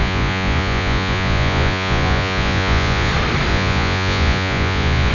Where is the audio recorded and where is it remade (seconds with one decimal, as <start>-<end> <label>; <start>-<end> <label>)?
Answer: 0.0-3.1 remade; 3.1-3.5 recorded; 3.5-5.1 remade

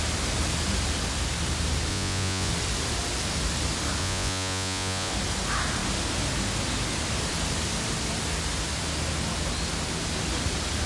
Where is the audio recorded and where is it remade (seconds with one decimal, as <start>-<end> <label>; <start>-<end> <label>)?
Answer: 0.0-1.9 recorded; 1.9-2.5 remade; 2.5-4.0 recorded; 4.0-5.1 remade; 5.1-10.9 recorded

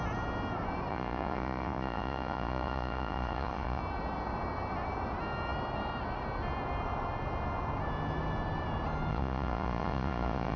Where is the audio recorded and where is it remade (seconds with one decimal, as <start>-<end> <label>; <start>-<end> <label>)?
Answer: 0.0-0.9 recorded; 0.9-3.8 remade; 3.8-9.1 recorded; 9.1-10.6 remade

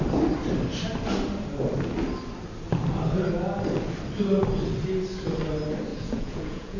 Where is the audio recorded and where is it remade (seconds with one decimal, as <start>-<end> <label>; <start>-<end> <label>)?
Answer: 0.0-5.9 recorded; 5.9-6.8 remade

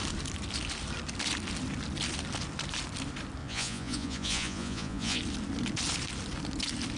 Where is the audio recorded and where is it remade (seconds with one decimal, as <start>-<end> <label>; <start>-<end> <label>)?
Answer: 0.0-3.4 recorded; 3.4-5.2 remade; 5.2-7.0 recorded